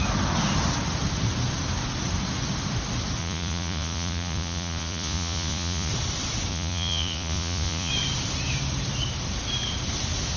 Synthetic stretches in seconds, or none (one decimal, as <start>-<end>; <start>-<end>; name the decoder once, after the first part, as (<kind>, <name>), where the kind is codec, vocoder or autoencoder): 3.2-5.9 (vocoder, Vocos); 6.5-7.9